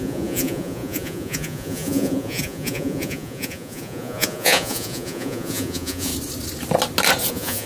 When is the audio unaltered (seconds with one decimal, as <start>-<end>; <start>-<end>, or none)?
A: 6.1-7.3